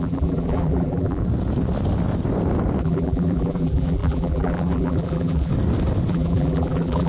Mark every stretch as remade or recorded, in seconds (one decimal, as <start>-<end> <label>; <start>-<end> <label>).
0.0-1.2 remade; 1.2-2.8 recorded; 2.8-5.5 remade; 5.5-6.1 recorded; 6.1-7.1 remade